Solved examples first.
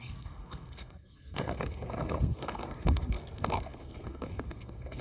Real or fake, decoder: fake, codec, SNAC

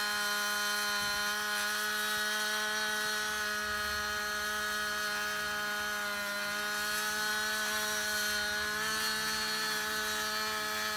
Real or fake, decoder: real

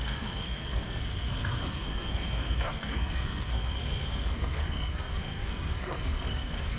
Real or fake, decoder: fake, codec, SNAC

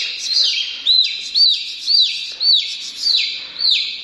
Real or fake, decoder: real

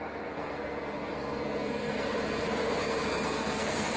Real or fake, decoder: fake, codec, SNAC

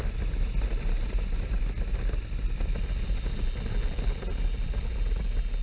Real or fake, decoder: real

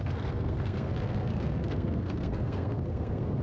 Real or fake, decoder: fake, codec, SNAC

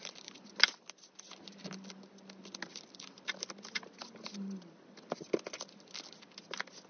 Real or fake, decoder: real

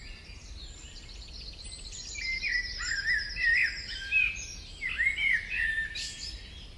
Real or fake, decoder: real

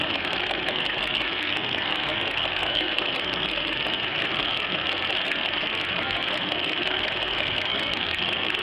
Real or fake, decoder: fake, codec, SNAC